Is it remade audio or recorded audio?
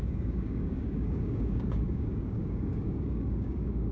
remade